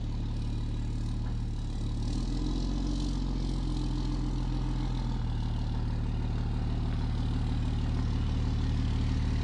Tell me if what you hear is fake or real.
real